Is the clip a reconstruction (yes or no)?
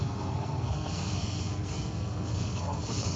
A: yes